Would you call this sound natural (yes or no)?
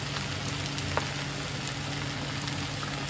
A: yes